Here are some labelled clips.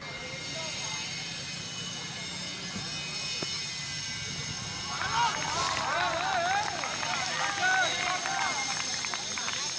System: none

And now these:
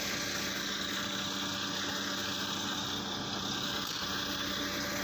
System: none